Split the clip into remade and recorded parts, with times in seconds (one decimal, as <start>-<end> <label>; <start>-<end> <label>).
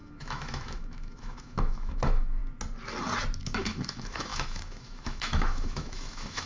0.0-2.4 remade; 2.4-3.4 recorded; 3.4-6.5 remade